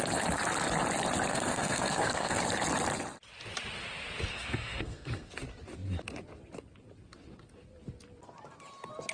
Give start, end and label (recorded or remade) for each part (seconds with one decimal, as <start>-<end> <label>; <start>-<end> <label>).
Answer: 0.0-1.3 recorded; 1.3-2.4 remade; 2.4-4.3 recorded; 4.3-5.3 remade; 5.3-9.1 recorded